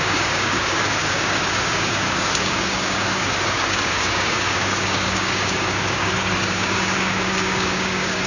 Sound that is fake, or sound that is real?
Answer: fake